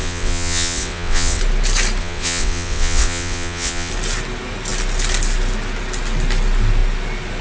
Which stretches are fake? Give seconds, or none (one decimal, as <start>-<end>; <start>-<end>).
0.0-1.4; 2.0-3.9